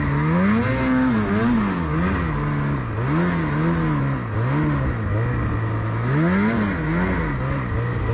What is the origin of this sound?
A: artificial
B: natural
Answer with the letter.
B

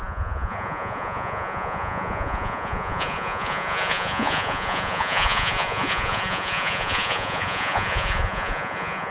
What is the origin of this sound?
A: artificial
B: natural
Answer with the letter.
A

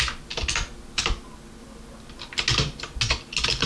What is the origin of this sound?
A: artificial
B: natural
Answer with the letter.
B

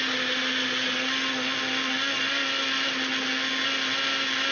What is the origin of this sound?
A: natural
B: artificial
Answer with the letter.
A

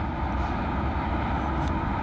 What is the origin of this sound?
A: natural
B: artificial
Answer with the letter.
A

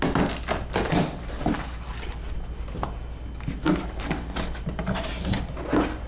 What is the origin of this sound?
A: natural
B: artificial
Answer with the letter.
A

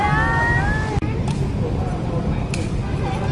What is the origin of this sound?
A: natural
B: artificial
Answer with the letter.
A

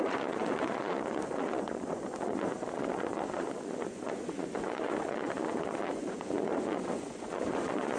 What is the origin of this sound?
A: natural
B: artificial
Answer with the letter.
B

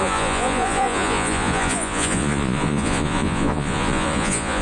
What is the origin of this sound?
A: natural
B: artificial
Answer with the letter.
B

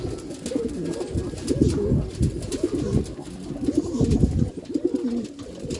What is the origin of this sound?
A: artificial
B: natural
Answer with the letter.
B